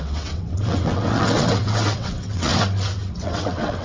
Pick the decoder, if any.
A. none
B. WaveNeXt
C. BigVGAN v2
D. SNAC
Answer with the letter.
B